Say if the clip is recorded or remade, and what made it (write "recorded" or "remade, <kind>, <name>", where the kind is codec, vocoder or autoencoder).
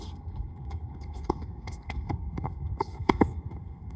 remade, codec, SNAC